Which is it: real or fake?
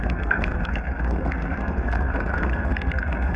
fake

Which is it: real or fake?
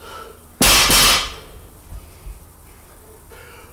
real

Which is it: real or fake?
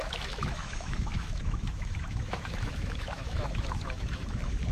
fake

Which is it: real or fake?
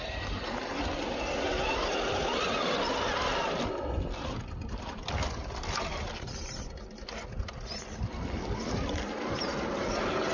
real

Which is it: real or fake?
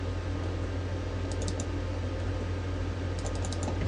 real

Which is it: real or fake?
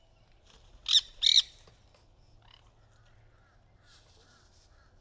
real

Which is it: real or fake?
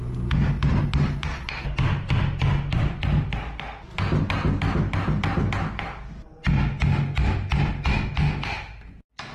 real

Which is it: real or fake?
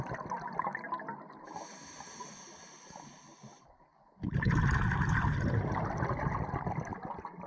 real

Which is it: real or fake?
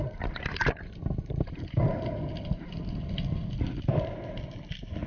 real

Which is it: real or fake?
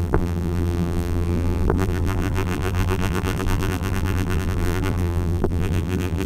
fake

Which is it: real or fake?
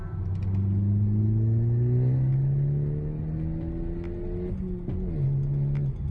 real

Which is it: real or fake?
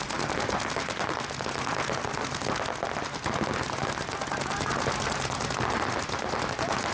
real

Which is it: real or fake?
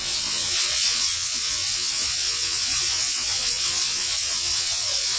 fake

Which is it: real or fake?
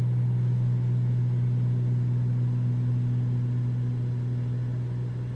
real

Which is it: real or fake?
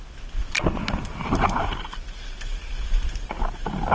real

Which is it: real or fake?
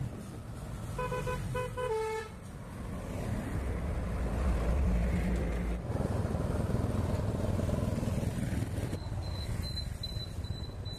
real